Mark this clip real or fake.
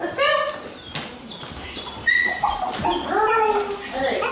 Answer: real